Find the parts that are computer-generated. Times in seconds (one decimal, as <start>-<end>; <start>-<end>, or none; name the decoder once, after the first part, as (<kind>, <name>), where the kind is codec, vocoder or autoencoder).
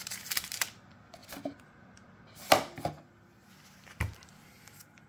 none